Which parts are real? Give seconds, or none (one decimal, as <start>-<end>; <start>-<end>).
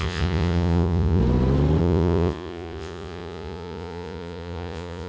1.2-1.8